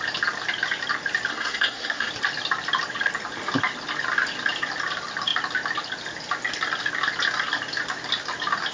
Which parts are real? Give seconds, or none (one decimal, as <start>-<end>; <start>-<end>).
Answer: 0.0-1.3; 2.1-8.7